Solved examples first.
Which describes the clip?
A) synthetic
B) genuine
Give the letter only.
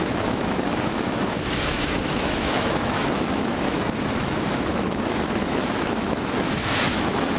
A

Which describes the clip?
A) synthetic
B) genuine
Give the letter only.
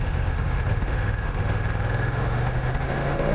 A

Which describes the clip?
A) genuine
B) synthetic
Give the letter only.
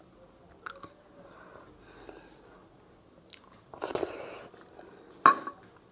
A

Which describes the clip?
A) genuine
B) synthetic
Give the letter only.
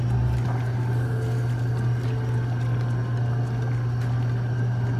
A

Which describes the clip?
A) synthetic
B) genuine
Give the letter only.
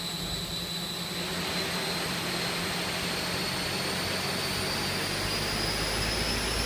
B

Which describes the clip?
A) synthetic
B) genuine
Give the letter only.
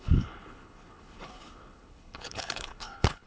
A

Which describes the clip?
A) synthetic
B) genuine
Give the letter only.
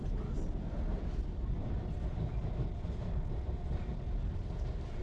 B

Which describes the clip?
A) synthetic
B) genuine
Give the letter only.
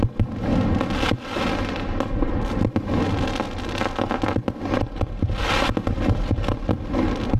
B